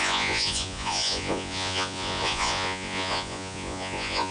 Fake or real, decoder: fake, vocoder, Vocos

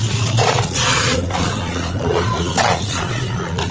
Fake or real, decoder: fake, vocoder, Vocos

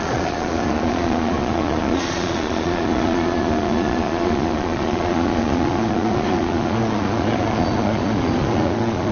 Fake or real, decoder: fake, vocoder, Vocos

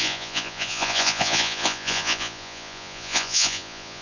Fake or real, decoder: fake, vocoder, Vocos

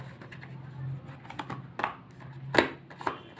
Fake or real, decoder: real